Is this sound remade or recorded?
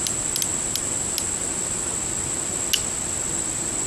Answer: recorded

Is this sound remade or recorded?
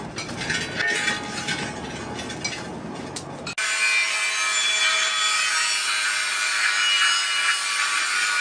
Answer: recorded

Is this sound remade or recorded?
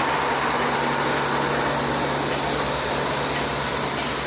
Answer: recorded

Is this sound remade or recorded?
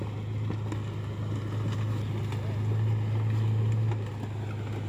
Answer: recorded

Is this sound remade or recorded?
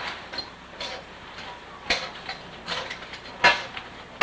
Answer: recorded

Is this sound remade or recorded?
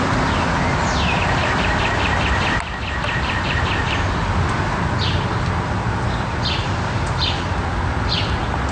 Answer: recorded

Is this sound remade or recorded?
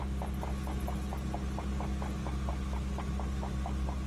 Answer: recorded